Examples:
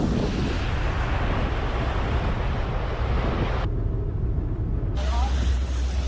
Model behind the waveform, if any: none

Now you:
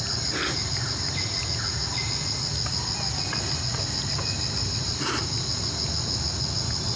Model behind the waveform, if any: none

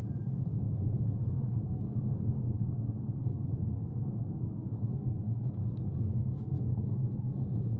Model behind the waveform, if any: codec, SNAC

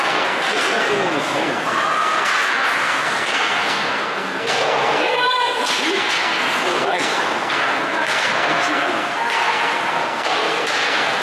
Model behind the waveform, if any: codec, SNAC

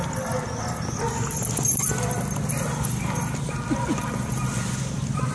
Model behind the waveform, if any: none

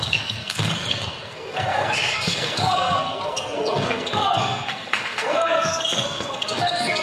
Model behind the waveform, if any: codec, SNAC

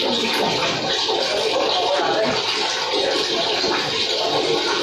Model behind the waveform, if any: none